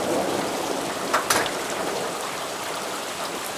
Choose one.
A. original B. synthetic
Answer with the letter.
A